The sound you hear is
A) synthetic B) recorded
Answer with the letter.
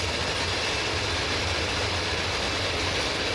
B